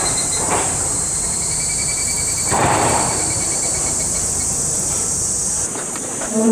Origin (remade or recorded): remade